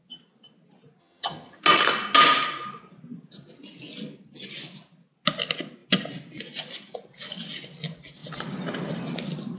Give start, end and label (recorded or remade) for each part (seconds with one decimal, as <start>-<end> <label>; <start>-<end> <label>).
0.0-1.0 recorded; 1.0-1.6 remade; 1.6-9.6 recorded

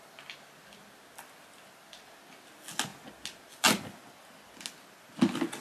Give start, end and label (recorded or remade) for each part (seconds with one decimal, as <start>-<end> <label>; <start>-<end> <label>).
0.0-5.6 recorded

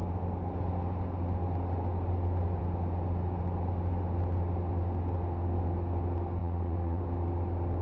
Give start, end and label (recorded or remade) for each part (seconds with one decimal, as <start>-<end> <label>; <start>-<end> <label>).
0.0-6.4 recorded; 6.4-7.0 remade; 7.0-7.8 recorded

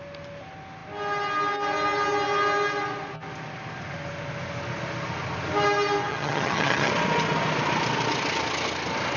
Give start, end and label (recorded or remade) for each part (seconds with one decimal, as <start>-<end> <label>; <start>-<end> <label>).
0.0-6.1 recorded; 6.1-6.9 remade; 6.9-9.2 recorded

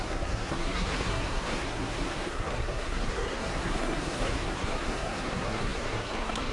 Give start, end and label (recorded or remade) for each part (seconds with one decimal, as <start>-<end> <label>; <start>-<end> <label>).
0.0-6.5 remade

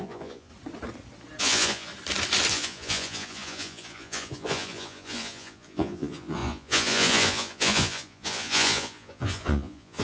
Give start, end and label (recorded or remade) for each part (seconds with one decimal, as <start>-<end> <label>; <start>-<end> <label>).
0.0-0.5 remade; 0.5-1.4 recorded; 1.4-1.9 remade; 1.9-2.5 recorded; 2.5-10.0 remade

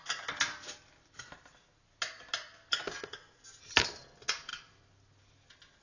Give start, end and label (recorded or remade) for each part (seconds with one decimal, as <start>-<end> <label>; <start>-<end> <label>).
0.0-5.8 recorded

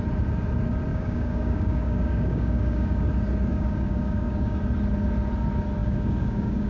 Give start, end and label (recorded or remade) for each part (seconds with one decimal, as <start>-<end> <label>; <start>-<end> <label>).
0.0-0.9 recorded; 0.9-3.1 remade; 3.1-3.5 recorded; 3.5-4.6 remade; 4.6-5.8 recorded; 5.8-6.7 remade